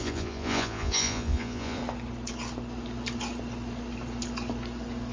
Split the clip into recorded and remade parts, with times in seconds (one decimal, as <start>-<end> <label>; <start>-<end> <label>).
0.0-1.8 remade; 1.8-5.1 recorded